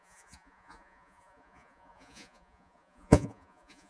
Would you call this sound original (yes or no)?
no